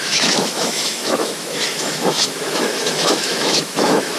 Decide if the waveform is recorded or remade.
remade